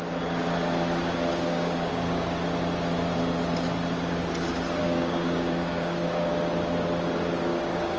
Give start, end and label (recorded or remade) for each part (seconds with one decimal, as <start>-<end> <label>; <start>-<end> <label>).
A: 0.0-1.3 recorded; 1.3-1.9 remade; 1.9-4.8 recorded; 4.8-6.3 remade; 6.3-7.5 recorded; 7.5-8.0 remade